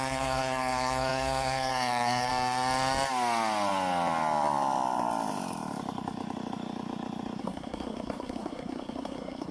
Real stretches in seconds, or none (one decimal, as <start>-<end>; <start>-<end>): 2.3-7.4